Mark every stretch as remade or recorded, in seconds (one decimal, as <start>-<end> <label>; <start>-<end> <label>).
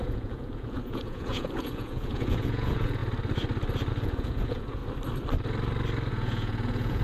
0.0-3.0 remade; 3.0-3.9 recorded; 3.9-4.8 remade; 4.8-6.1 recorded; 6.1-7.0 remade